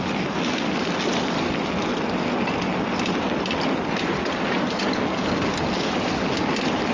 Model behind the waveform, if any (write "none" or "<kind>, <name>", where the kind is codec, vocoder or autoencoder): none